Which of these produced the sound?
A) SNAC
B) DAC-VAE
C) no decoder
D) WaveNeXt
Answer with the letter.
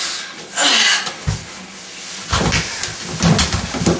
C